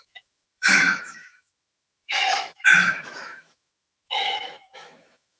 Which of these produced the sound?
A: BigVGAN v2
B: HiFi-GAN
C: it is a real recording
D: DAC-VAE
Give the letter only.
D